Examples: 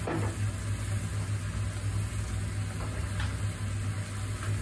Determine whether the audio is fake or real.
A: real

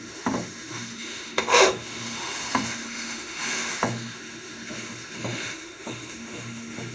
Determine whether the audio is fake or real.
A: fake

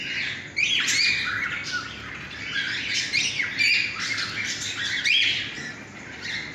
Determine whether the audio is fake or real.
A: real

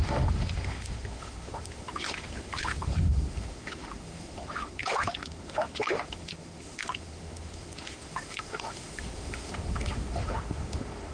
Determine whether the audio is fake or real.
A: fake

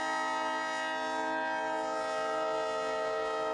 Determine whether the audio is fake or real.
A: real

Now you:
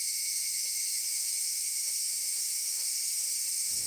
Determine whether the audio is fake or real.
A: fake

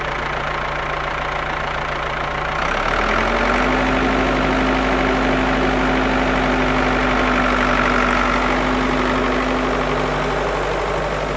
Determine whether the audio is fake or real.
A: real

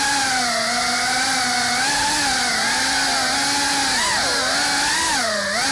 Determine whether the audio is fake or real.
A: real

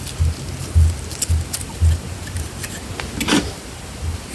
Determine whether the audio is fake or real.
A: real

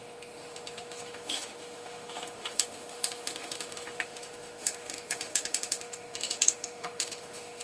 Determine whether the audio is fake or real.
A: fake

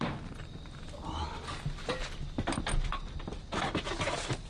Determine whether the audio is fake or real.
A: real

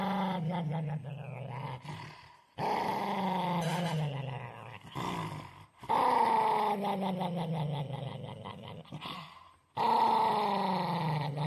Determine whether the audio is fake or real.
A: real